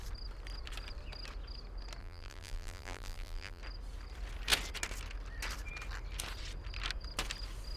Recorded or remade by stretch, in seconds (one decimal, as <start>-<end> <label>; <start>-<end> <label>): 0.0-2.0 recorded; 2.0-3.6 remade; 3.6-7.8 recorded